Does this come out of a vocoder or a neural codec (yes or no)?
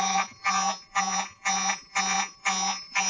yes